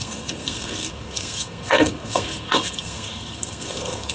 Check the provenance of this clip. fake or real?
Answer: fake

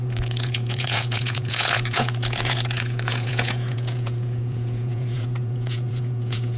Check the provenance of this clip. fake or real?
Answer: fake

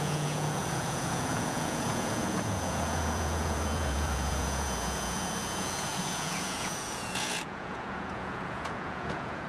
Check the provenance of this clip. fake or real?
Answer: fake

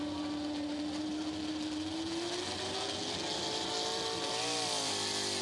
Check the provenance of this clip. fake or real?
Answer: real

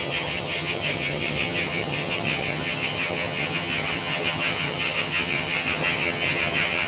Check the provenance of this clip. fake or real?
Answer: fake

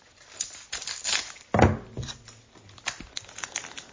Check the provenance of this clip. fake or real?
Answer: real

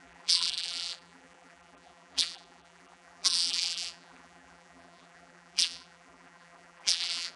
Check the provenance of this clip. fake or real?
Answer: fake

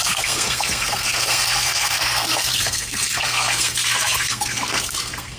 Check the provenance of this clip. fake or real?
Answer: fake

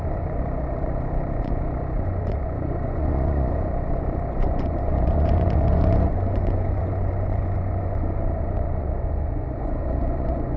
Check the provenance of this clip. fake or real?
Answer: fake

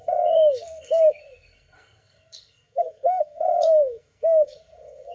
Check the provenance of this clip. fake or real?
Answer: fake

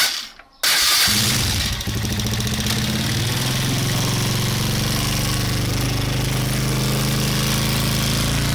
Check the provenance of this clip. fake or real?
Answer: real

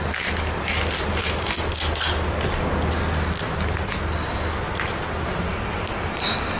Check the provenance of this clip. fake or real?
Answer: real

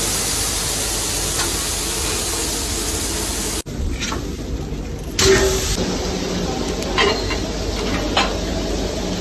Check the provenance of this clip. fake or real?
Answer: real